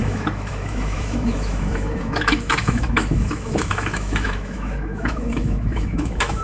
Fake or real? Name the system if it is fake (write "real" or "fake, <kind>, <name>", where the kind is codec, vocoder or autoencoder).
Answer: fake, autoencoder, DAC-VAE